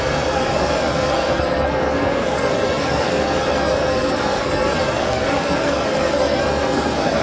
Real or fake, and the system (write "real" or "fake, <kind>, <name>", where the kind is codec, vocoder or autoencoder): fake, codec, SNAC